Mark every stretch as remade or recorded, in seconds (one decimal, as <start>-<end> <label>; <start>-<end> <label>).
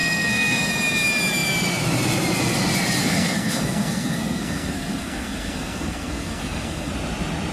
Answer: 0.0-0.7 remade; 0.7-3.0 recorded; 3.0-6.9 remade; 6.9-7.5 recorded